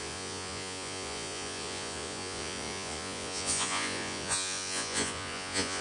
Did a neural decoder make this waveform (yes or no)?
yes